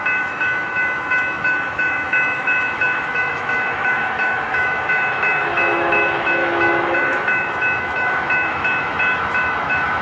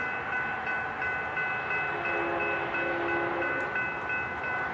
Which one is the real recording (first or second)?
second